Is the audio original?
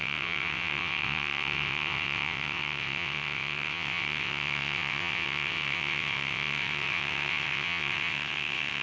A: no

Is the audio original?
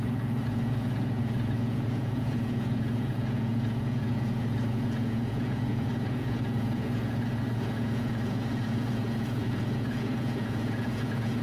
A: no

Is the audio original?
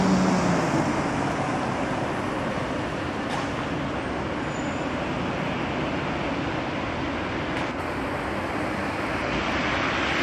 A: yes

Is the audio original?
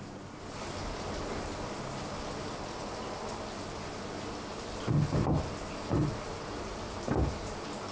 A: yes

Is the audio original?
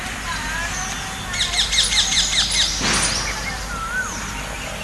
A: yes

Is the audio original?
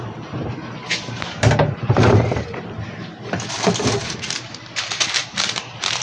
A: no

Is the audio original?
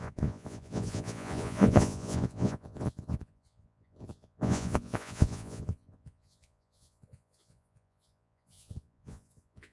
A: no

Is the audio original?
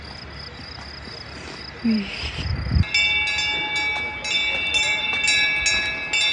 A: yes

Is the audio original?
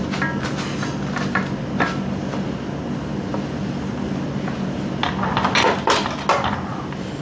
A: yes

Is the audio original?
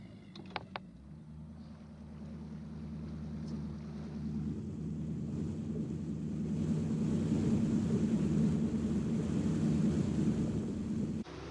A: yes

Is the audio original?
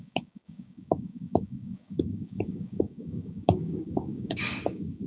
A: no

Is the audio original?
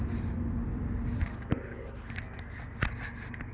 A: yes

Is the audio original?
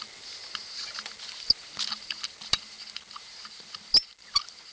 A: yes